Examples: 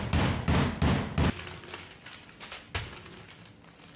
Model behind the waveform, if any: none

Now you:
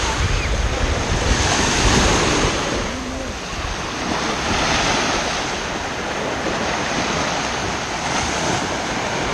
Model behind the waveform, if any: none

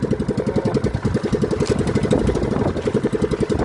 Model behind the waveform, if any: none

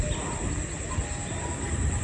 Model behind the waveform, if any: none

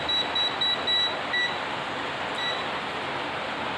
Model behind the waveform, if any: none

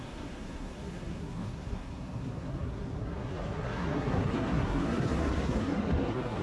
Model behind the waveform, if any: codec, SNAC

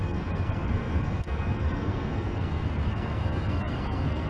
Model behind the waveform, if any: codec, SNAC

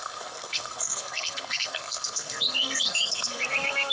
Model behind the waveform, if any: codec, SNAC